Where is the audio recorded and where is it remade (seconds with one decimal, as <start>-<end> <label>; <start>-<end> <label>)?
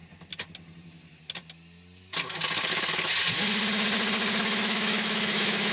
0.0-2.7 recorded; 2.7-3.1 remade; 3.1-4.4 recorded; 4.4-5.7 remade